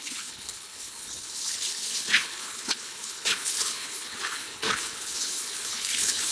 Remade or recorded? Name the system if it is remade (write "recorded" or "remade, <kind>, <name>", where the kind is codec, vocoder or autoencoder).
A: remade, codec, HILCodec